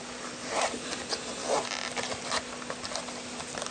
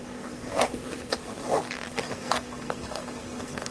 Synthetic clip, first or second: second